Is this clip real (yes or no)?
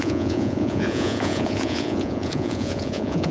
no